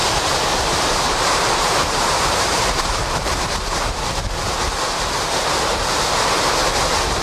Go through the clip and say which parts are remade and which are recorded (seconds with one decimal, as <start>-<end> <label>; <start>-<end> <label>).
0.0-4.3 remade; 4.3-5.7 recorded; 5.7-6.3 remade; 6.3-7.2 recorded